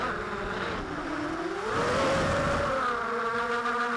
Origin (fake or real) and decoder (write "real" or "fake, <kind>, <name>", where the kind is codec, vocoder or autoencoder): real